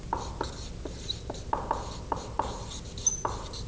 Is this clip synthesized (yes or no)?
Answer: no